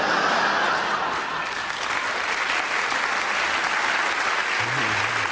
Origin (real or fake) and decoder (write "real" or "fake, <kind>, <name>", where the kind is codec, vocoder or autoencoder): real